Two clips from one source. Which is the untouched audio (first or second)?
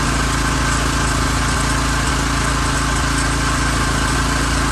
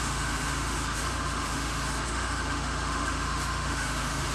first